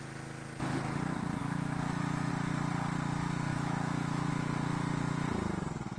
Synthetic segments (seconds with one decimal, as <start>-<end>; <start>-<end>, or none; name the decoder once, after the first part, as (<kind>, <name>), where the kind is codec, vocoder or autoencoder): 1.4-2.3 (autoencoder, DAC-VAE); 3.5-4.3